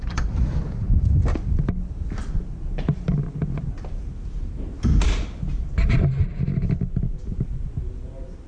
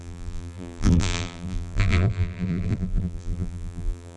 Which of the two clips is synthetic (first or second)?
second